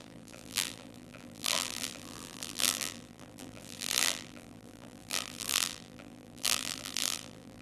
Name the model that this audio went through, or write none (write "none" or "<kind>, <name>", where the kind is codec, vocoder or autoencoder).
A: vocoder, BigVGAN v2